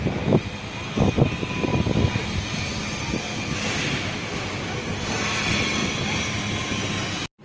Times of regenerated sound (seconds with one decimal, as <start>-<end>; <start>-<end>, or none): 5.8-6.5